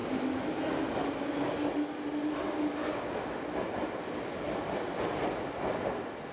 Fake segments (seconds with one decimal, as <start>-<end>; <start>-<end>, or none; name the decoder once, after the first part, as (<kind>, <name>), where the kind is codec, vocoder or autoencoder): none